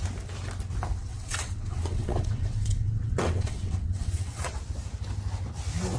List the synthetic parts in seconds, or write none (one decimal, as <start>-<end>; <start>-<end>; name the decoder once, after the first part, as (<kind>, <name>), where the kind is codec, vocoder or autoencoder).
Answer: 1.0-4.6 (vocoder, WaveNeXt)